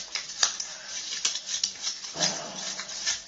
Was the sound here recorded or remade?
recorded